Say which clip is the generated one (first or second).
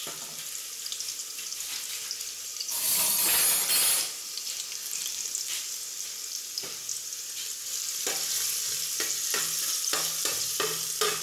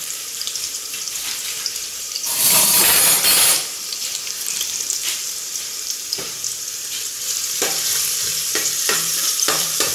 second